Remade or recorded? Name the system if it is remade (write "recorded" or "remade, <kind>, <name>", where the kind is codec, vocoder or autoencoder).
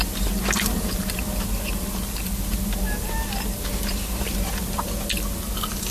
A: recorded